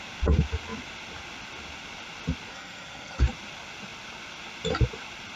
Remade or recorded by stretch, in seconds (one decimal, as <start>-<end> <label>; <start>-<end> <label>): 0.0-2.5 recorded; 2.5-3.2 remade; 3.2-5.4 recorded